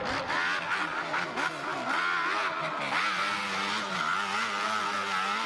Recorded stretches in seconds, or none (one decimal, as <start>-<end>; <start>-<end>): 0.0-5.5